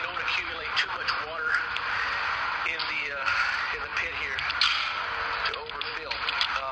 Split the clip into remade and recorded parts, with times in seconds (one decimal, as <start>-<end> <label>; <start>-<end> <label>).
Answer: 0.0-3.9 remade; 3.9-5.2 recorded; 5.2-6.7 remade